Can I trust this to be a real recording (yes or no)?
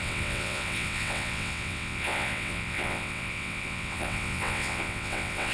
no